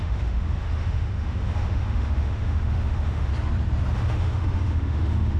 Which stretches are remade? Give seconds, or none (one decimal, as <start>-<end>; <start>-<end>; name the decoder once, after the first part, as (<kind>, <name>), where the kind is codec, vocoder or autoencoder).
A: 0.0-3.3 (autoencoder, DAC-VAE); 3.9-5.4